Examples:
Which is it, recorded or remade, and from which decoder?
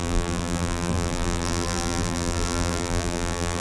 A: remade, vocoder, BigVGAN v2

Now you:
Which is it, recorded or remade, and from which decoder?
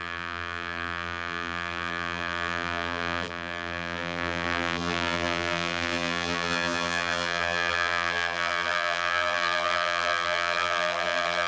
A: remade, vocoder, BigVGAN v2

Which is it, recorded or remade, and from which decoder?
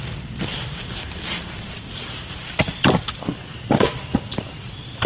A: remade, vocoder, BigVGAN v2